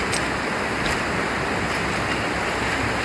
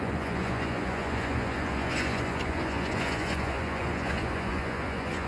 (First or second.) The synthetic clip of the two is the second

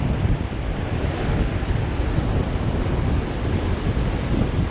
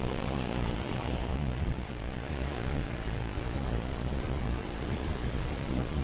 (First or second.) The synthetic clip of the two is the second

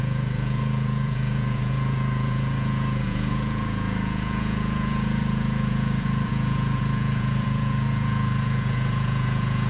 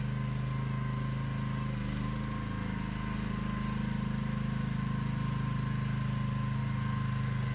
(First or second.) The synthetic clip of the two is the first